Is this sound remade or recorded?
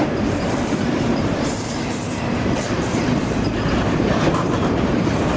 remade